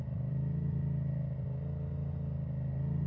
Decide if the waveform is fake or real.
real